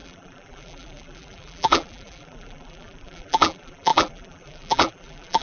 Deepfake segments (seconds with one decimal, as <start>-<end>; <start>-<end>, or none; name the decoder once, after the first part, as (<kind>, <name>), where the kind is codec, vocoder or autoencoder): 0.0-5.4 (vocoder, BigVGAN v2)